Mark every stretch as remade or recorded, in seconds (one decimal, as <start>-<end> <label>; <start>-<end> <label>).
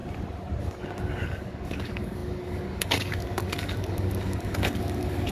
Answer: 0.0-0.6 recorded; 0.6-5.3 remade